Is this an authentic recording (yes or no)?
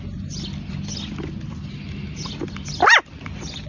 yes